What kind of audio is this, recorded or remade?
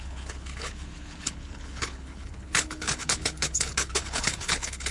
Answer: remade